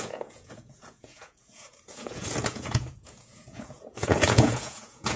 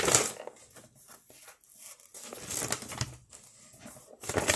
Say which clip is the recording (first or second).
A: second